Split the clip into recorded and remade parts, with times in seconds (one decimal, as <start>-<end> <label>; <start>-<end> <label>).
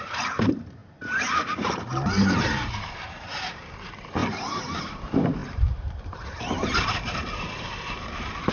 0.0-8.5 remade